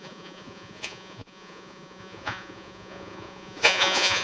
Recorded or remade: remade